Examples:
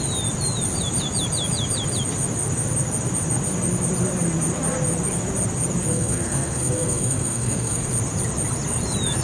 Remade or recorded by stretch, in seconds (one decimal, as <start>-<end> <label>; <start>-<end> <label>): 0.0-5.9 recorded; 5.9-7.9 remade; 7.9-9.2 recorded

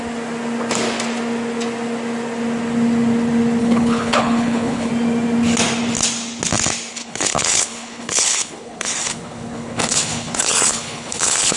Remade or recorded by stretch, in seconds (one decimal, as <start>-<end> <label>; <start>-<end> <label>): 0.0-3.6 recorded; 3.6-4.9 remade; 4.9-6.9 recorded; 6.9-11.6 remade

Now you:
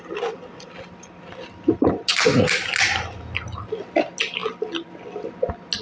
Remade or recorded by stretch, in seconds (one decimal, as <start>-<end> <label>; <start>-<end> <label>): 0.0-5.8 recorded

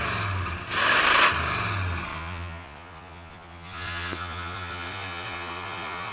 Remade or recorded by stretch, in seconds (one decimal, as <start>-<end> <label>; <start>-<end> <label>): 0.0-2.1 recorded; 2.1-6.1 remade

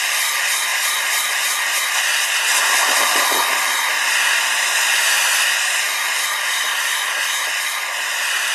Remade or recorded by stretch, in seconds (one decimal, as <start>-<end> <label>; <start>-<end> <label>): 0.0-0.7 recorded; 0.7-1.8 remade; 1.8-8.5 recorded

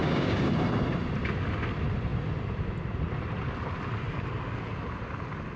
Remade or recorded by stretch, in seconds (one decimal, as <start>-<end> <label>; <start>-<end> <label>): 0.0-0.5 remade; 0.5-5.6 recorded

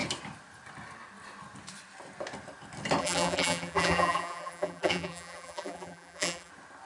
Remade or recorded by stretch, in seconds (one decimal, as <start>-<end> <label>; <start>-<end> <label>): 0.0-3.0 recorded; 3.0-6.5 remade; 6.5-6.9 recorded